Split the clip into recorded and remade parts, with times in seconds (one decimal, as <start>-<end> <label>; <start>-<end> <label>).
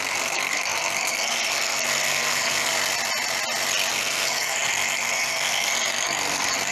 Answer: 0.0-2.7 remade; 2.7-3.9 recorded; 3.9-6.7 remade